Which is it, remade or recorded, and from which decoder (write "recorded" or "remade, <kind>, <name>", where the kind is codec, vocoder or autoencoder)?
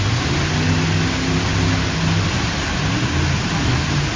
recorded